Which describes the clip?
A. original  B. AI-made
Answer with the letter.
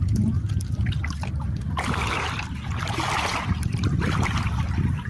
A